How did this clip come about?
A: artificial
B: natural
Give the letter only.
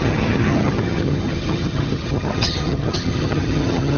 A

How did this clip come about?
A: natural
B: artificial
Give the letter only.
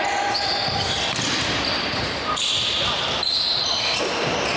A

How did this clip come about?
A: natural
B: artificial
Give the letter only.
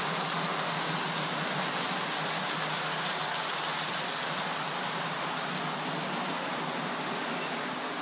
A